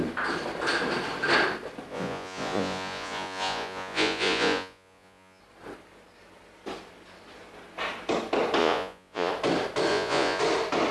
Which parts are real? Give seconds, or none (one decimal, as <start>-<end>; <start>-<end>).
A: 0.0-1.9; 5.4-8.6; 9.3-9.9; 10.4-10.9